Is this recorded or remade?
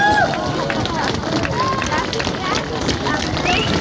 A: recorded